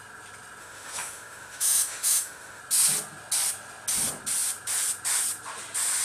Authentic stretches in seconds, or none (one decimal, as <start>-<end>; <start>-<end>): 0.0-0.6; 2.6-6.0